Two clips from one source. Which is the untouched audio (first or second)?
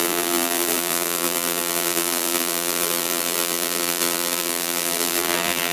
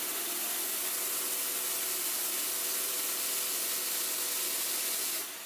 second